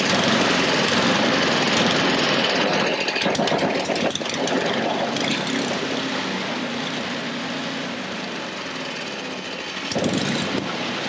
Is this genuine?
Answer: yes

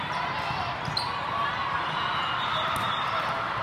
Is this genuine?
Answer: yes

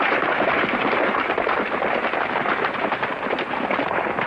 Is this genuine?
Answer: no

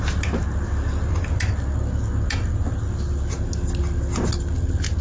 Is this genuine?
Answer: yes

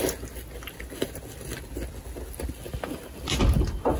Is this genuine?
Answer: yes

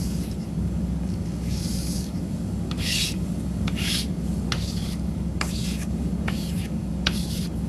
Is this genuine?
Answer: no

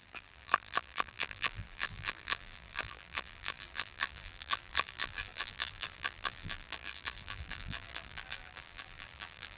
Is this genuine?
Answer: no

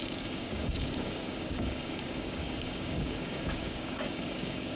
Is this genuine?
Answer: no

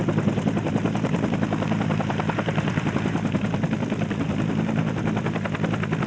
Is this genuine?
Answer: no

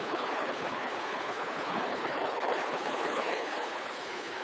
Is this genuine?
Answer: no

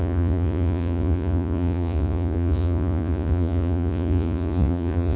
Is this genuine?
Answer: no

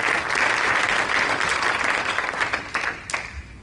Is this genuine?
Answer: yes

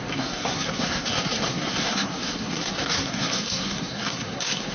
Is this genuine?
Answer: no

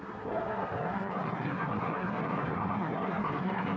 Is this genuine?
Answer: no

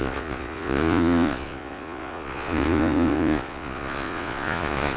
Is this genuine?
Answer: no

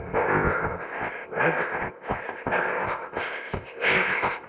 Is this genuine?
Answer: no